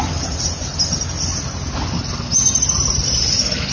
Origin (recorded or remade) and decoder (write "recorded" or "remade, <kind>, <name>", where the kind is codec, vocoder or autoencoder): recorded